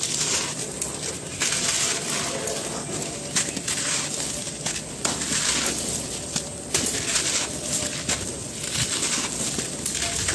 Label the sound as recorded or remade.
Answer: recorded